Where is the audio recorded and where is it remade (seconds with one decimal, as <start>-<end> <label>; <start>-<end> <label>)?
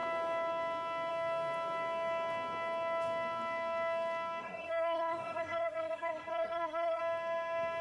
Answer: 0.0-4.4 recorded; 4.4-7.0 remade; 7.0-7.8 recorded